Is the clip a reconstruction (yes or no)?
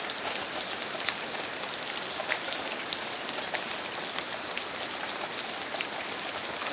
no